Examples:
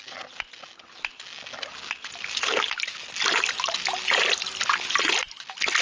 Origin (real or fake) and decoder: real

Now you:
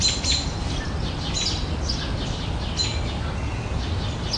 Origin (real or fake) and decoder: real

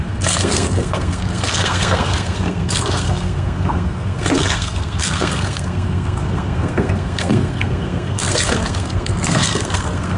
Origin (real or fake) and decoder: fake, codec, SNAC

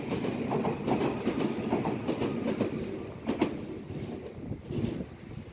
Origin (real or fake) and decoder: real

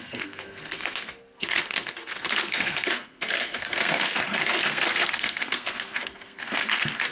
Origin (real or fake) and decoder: fake, codec, SNAC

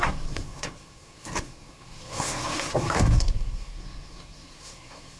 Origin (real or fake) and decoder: fake, codec, SNAC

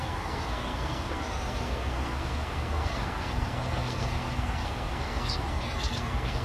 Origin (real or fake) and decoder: fake, codec, SNAC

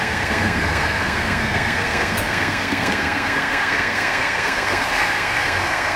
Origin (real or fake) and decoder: fake, codec, SNAC